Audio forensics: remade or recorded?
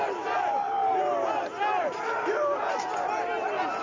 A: recorded